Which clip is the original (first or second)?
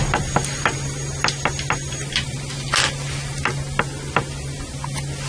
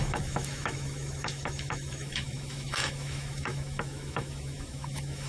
first